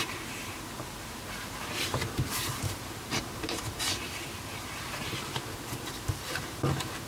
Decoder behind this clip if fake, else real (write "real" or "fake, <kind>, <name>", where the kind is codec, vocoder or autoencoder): fake, vocoder, BigVGAN v2